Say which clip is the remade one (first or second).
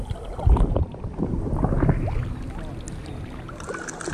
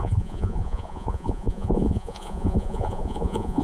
second